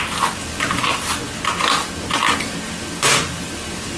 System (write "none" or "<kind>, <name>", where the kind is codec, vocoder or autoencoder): none